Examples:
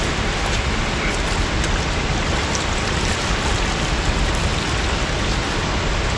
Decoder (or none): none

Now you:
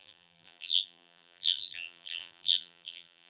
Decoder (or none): vocoder, BigVGAN v2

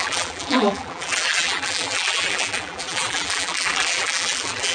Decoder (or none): vocoder, BigVGAN v2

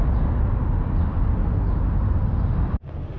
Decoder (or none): none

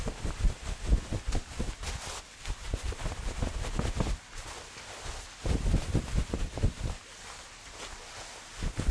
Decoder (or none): none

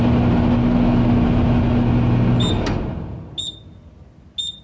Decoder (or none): none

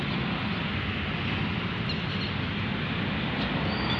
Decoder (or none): none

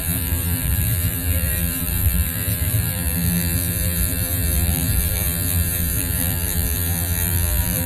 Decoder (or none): vocoder, BigVGAN v2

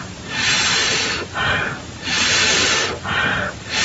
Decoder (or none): vocoder, BigVGAN v2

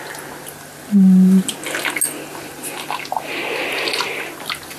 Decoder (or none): none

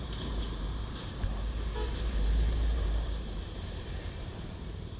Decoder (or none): vocoder, BigVGAN v2